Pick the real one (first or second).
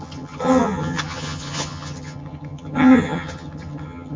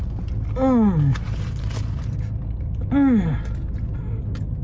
second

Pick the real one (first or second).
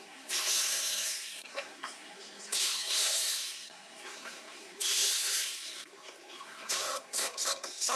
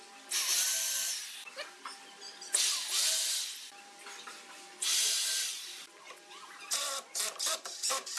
second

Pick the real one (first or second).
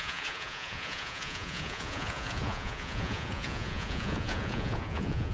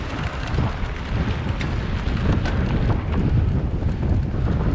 second